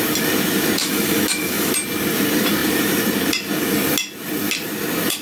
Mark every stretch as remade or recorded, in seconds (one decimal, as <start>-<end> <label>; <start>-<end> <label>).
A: 0.0-0.8 recorded; 0.8-1.7 remade; 1.7-5.2 recorded